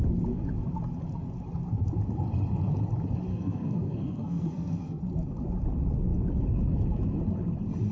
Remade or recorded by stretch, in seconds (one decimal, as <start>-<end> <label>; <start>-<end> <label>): 0.0-3.3 recorded; 3.3-5.0 remade; 5.0-7.9 recorded